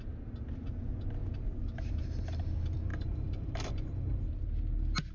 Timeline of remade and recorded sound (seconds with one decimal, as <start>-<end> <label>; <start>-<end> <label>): 0.0-2.9 recorded; 2.9-4.3 remade; 4.3-5.1 recorded